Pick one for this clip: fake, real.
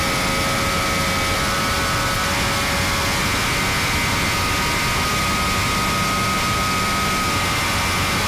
real